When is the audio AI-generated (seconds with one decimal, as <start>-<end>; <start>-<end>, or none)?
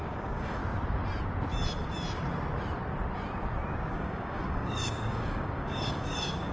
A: 0.0-0.6; 3.9-6.5